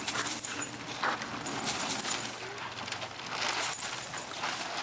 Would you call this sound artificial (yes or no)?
no